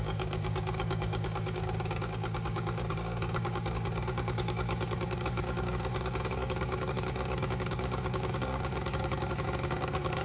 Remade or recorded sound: remade